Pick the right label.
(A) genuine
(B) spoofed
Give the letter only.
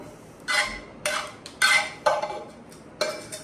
A